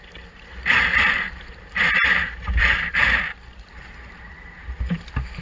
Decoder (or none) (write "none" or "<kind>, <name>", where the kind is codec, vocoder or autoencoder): vocoder, BigVGAN v2